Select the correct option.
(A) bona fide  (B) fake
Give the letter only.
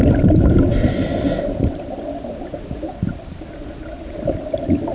B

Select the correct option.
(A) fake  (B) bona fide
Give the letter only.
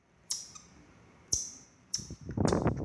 A